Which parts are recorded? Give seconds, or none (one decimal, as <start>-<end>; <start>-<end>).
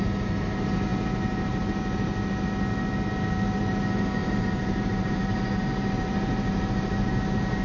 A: 0.0-4.2; 7.1-7.6